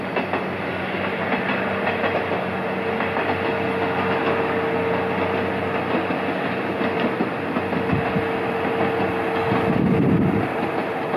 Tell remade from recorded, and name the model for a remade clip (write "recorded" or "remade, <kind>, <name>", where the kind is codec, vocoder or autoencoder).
recorded